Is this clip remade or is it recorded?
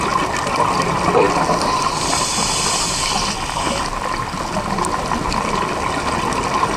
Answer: recorded